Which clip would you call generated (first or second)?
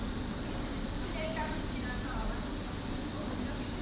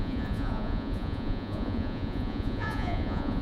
second